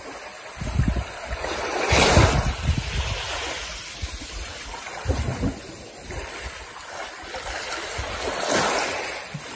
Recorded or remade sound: recorded